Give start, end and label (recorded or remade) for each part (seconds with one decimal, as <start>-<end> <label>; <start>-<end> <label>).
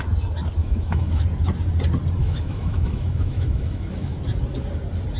0.0-0.6 recorded; 0.6-1.2 remade; 1.2-2.2 recorded; 2.2-4.2 remade; 4.2-5.2 recorded